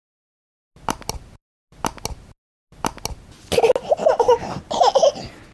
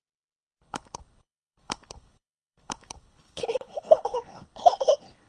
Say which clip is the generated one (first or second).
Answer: second